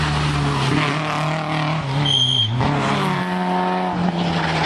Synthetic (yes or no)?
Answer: no